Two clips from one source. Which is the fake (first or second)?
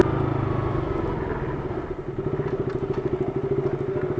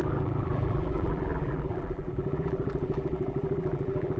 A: second